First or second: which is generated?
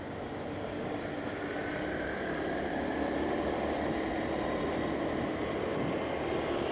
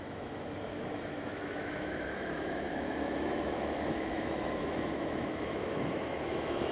second